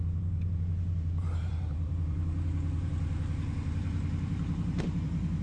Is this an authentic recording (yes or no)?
no